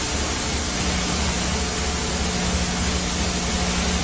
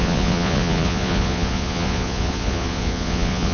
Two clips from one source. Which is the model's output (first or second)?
second